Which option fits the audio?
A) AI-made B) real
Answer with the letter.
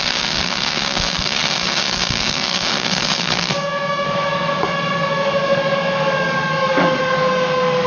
A